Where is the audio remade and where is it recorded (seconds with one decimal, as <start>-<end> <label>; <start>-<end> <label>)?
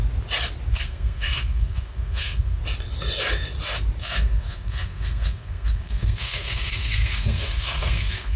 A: 0.0-0.7 recorded; 0.7-2.6 remade; 2.6-4.0 recorded; 4.0-8.4 remade